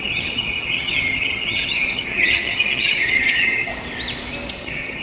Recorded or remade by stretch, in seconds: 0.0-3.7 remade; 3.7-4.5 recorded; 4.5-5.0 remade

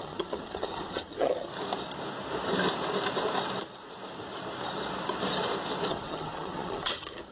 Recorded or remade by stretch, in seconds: 0.0-1.5 remade; 1.5-5.9 recorded; 5.9-7.3 remade

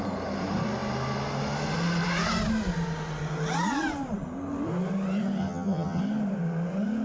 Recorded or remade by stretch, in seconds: 0.0-5.4 recorded; 5.4-6.0 remade; 6.0-7.0 recorded